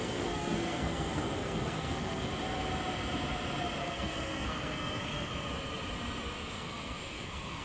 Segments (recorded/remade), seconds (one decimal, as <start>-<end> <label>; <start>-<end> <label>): 0.0-2.3 remade; 2.3-3.8 recorded; 3.8-5.3 remade; 5.3-6.5 recorded; 6.5-7.6 remade